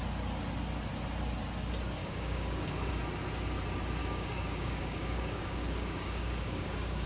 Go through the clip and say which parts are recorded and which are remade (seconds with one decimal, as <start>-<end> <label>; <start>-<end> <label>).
0.0-2.0 recorded; 2.0-2.9 remade; 2.9-4.0 recorded; 4.0-7.1 remade